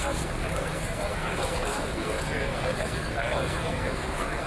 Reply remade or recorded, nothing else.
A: remade